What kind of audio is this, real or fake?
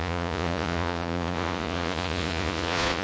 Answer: fake